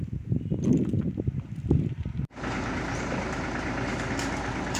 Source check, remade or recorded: recorded